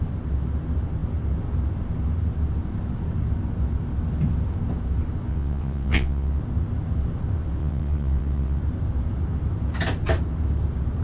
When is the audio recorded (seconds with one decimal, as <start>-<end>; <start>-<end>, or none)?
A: 0.0-5.3; 6.4-7.6; 8.6-11.0